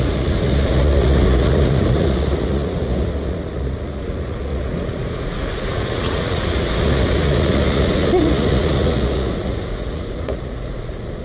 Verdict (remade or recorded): remade